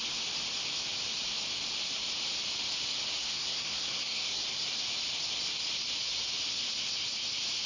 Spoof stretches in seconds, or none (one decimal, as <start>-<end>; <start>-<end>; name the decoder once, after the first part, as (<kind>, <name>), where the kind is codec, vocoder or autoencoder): 3.2-4.4 (codec, SNAC)